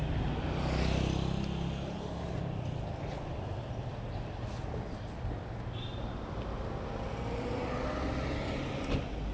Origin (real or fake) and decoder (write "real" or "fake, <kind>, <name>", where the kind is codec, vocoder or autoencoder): real